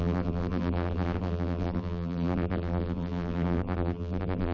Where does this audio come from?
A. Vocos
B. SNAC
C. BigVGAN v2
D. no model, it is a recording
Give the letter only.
C